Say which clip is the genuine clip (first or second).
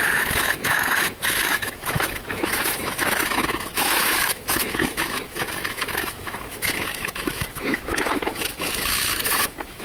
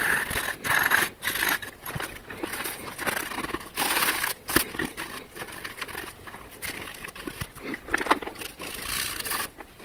second